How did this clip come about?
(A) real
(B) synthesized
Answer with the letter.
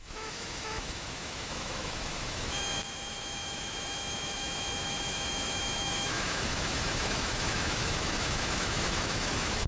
B